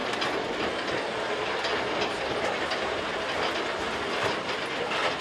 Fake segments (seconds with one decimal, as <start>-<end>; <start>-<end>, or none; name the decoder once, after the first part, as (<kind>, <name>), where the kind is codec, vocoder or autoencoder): none